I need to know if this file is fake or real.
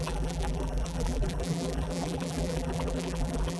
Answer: fake